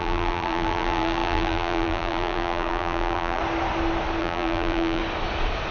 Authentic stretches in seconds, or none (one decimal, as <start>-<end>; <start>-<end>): 3.4-4.2; 5.0-5.7

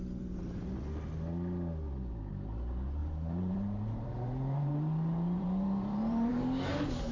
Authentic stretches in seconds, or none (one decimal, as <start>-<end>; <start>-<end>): 0.0-3.0; 6.4-7.1

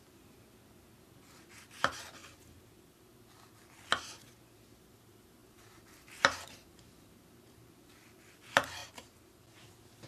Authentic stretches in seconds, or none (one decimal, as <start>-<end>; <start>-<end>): 0.0-5.4; 7.7-8.8; 9.7-10.1

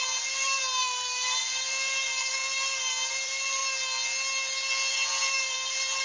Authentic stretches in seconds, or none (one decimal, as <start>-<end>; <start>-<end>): 3.6-4.9

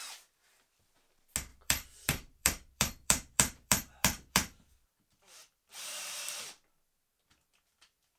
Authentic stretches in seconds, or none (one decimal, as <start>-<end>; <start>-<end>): 0.0-1.5; 6.4-8.2

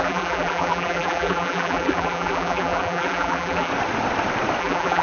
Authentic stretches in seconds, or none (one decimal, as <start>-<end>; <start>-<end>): 3.7-4.6